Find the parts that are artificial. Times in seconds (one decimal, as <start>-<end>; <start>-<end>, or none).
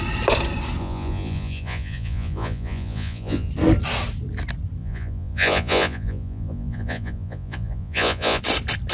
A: 0.8-3.5; 4.8-8.4